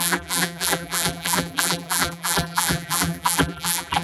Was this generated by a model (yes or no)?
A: yes